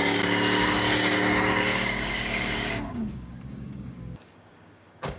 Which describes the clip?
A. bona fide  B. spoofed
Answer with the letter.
B